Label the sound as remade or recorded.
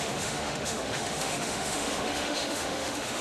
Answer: remade